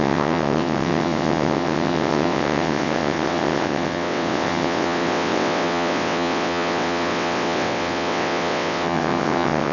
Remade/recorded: remade